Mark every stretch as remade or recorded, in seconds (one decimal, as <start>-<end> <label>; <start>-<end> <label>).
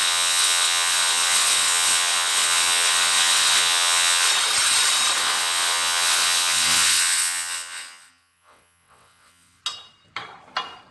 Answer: 0.0-4.3 remade; 4.3-5.2 recorded; 5.2-9.6 remade; 9.6-10.9 recorded